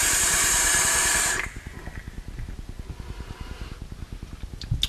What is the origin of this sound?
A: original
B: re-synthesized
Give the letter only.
A